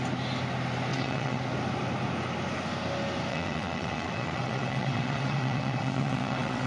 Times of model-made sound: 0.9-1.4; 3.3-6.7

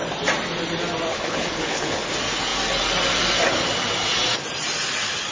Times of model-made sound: 1.1-2.1

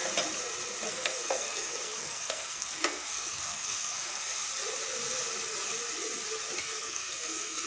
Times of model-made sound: 0.9-4.4; 6.6-7.7